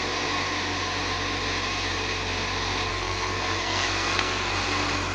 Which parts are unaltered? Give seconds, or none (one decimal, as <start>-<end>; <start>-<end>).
0.0-2.9; 4.5-5.1